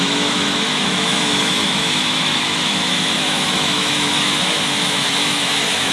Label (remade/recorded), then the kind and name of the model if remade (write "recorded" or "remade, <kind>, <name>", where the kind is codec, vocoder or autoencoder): remade, autoencoder, DAC-VAE